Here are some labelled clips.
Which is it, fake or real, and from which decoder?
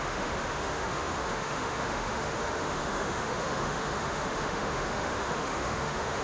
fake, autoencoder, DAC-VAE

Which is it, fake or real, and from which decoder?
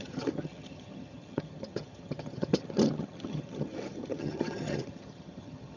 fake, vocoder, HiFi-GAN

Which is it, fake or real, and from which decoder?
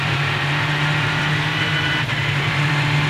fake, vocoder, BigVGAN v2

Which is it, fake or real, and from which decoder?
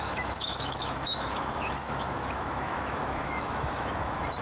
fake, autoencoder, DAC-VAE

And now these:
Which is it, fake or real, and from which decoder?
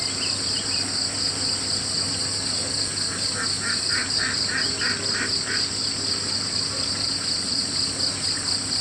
real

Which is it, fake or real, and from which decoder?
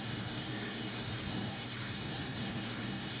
fake, codec, SNAC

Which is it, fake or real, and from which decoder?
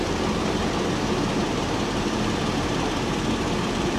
fake, vocoder, BigVGAN v2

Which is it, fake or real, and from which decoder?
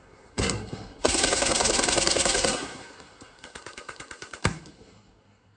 fake, codec, SNAC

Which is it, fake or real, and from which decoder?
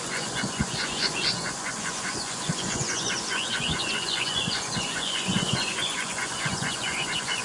fake, vocoder, Vocos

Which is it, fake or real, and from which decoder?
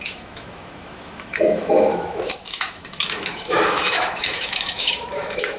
fake, autoencoder, DAC-VAE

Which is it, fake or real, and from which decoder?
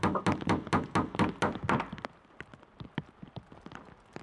real